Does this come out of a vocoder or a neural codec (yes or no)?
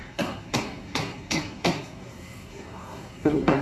yes